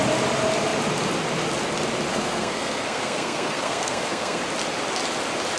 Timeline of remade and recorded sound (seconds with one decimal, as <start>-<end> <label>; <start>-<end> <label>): 0.0-2.1 recorded; 2.1-4.4 remade; 4.4-5.6 recorded